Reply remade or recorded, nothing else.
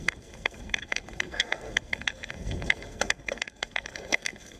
remade